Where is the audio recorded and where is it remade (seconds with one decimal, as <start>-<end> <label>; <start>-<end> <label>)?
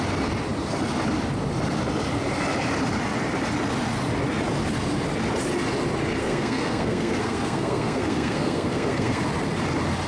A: 0.0-6.2 recorded; 6.2-9.2 remade; 9.2-10.1 recorded